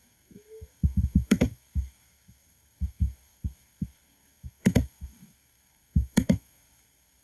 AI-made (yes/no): yes